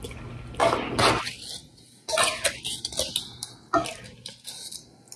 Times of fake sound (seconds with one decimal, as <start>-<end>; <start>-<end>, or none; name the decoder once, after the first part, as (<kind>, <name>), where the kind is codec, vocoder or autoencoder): none